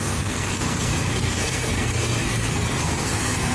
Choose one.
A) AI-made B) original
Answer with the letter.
A